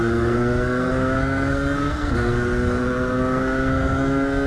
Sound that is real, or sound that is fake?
fake